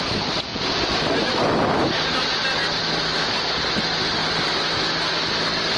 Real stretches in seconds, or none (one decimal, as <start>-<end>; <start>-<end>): 0.0-0.5; 1.0-5.8